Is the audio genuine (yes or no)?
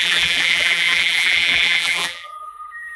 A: no